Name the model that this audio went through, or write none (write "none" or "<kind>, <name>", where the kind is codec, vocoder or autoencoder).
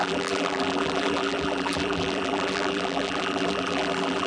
vocoder, BigVGAN v2